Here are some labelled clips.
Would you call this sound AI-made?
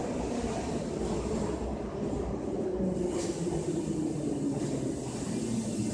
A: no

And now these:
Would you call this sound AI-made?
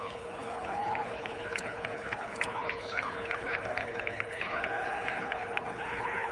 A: yes